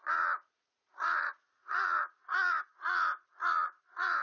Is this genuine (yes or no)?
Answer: no